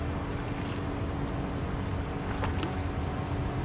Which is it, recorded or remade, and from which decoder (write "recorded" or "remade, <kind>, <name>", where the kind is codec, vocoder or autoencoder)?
recorded